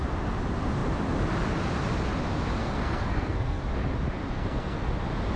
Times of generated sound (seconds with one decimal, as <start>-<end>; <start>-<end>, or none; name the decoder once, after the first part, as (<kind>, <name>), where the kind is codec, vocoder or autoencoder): 2.6-3.6 (codec, SNAC); 4.3-4.9